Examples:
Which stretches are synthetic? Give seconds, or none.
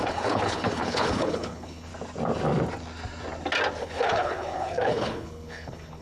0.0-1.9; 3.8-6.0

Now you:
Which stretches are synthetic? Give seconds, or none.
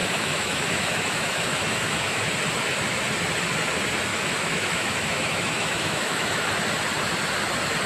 0.0-2.2; 4.1-6.5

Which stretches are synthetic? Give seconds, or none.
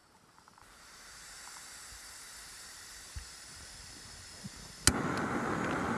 0.0-3.6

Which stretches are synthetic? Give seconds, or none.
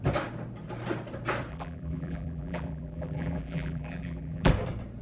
1.5-4.5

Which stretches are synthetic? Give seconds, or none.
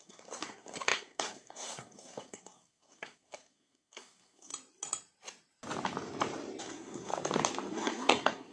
0.0-4.5; 6.6-7.1; 7.7-8.5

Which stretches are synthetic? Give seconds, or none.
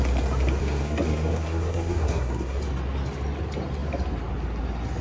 0.6-2.6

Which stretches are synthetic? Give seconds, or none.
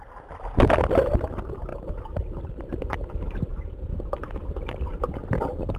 1.7-2.6; 3.5-5.2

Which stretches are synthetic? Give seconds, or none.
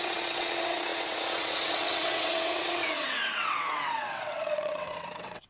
0.0-5.5